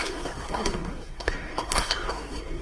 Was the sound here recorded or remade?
remade